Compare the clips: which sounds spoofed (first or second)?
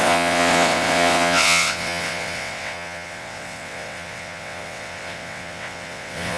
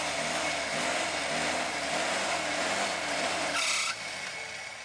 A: first